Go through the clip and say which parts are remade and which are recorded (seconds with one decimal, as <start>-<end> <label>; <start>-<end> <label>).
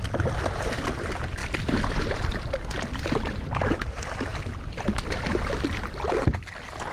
0.0-6.9 remade